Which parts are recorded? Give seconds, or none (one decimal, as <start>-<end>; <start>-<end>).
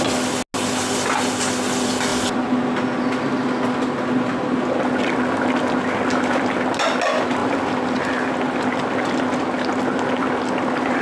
0.0-2.1; 3.3-7.4; 8.3-11.0